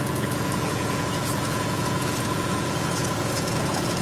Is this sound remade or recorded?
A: remade